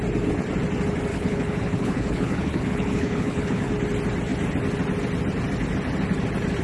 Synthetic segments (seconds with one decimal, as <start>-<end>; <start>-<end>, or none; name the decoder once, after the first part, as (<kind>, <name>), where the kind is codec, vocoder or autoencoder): 1.1-3.7 (codec, HILCodec)